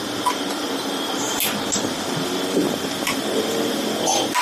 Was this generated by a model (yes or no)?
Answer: no